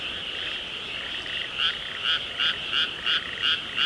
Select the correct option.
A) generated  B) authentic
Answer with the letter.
B